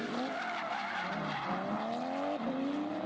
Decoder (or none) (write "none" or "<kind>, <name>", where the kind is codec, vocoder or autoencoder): none